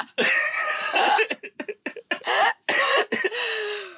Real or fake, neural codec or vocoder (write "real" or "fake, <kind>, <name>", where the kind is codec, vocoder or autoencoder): real